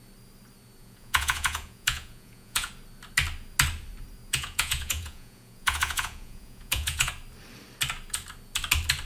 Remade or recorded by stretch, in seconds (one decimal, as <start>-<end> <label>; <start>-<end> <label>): 0.0-0.8 recorded; 0.8-2.7 remade; 2.7-4.3 recorded; 4.3-7.1 remade; 7.1-9.0 recorded